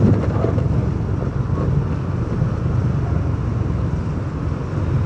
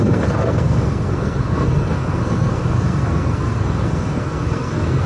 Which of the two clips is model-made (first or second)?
second